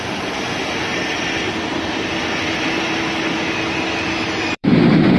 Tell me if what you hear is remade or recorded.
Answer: remade